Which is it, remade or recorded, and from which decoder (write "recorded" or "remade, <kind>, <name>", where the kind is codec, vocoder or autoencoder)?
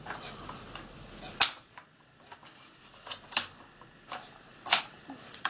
recorded